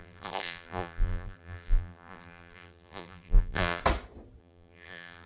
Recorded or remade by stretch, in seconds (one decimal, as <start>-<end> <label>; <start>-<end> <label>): 0.0-3.8 remade; 3.8-4.4 recorded; 4.4-5.3 remade